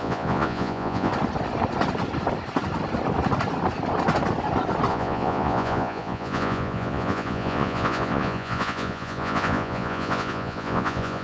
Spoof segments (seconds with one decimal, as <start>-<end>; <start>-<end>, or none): 0.0-1.1; 4.9-11.2